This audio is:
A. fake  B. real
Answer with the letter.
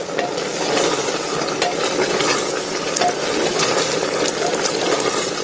B